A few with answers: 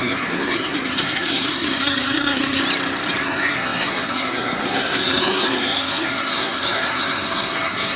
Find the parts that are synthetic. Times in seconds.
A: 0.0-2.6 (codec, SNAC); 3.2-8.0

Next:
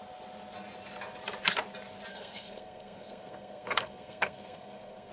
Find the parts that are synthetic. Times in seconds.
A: 2.1-5.1 (codec, SNAC)

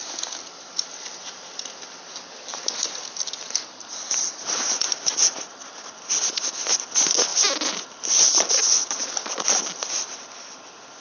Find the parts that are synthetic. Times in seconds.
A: none

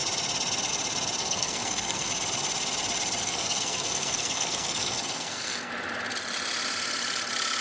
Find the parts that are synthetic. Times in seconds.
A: 1.2-2.1 (codec, SNAC); 3.2-5.7

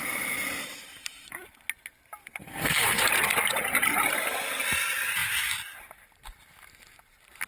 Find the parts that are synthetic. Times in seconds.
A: 2.2-3.0 (codec, SNAC)